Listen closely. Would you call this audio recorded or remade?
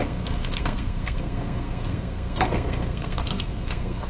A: remade